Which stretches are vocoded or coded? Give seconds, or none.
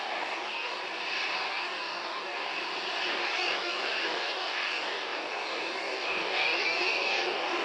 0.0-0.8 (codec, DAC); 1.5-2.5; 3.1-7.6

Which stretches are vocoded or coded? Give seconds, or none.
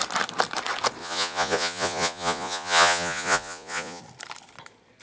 1.0-4.0 (vocoder, Vocos)